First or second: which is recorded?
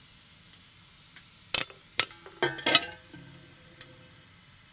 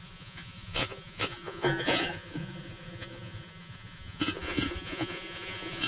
first